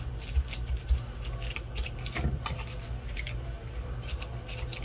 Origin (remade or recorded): recorded